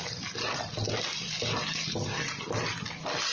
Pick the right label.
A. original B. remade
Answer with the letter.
A